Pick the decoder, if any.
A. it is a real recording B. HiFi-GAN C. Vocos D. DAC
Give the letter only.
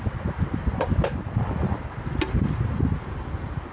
A